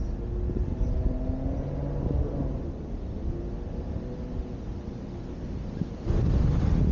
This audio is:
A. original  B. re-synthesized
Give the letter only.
A